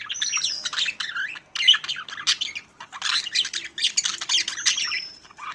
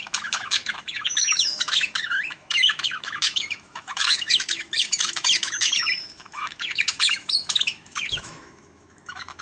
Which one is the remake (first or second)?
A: second